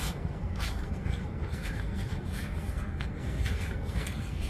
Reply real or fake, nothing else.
fake